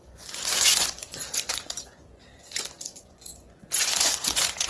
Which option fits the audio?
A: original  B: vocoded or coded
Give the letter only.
B